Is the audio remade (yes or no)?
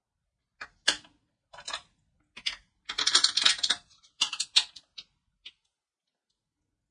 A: no